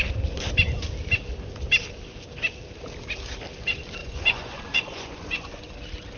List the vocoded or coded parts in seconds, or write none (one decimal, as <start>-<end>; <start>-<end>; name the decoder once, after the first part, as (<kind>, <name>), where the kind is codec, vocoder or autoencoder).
4.0-5.7 (vocoder, Vocos)